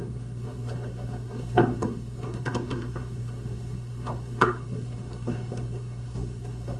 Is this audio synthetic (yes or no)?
yes